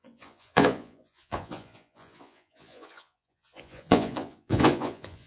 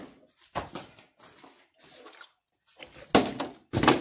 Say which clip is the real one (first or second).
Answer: second